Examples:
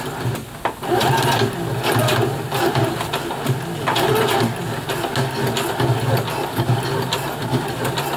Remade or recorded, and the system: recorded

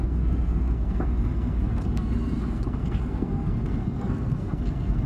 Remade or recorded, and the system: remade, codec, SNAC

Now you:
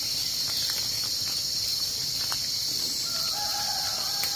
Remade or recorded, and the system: recorded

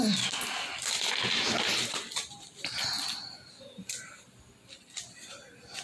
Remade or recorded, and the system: recorded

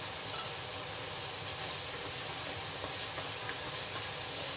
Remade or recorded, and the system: recorded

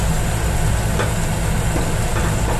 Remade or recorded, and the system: recorded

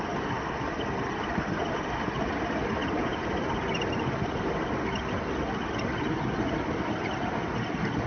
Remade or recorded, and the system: recorded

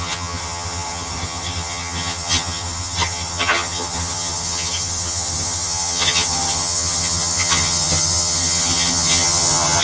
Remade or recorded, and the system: remade, vocoder, HiFi-GAN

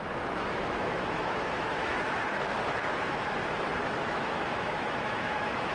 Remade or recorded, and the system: remade, autoencoder, DAC-VAE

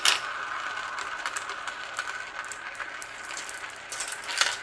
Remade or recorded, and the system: recorded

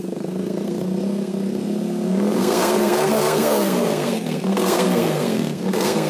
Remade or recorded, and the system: remade, codec, SNAC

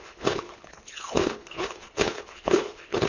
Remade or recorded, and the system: remade, codec, HILCodec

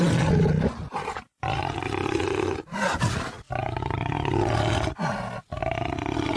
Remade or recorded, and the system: recorded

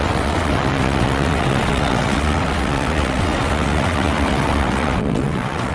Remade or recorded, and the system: remade, vocoder, WaveNeXt